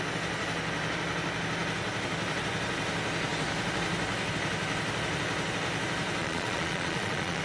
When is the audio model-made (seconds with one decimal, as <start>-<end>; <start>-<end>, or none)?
6.2-7.4